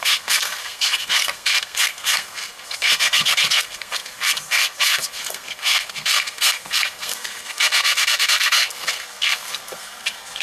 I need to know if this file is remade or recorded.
remade